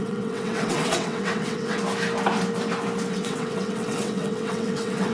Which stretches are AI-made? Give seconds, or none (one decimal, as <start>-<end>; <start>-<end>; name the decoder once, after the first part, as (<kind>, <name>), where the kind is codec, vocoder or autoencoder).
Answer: 0.0-1.8 (vocoder, WaveNeXt); 3.1-5.1